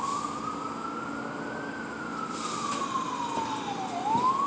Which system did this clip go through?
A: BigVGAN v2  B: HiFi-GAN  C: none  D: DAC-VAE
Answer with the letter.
C